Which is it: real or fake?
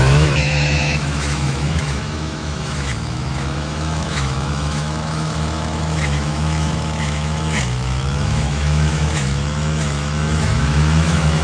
fake